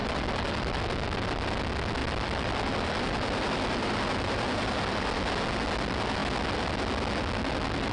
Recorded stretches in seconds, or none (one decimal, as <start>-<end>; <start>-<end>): 0.8-2.0; 5.3-7.9